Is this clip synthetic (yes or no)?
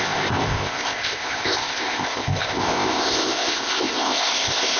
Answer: yes